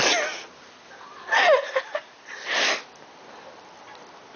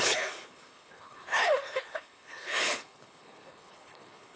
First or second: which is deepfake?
second